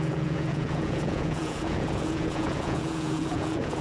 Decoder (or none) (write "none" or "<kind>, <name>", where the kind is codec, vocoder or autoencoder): vocoder, Vocos